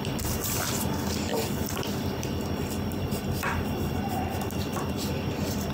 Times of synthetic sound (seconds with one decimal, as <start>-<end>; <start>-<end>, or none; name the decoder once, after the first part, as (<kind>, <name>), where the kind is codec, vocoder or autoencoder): none